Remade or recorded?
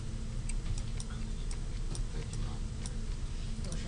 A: recorded